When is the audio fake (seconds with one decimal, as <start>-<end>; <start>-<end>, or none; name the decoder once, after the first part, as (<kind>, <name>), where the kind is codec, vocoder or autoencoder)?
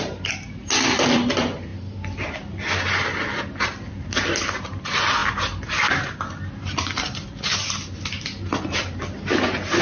none